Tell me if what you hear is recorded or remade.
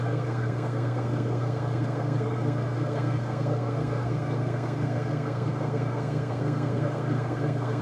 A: remade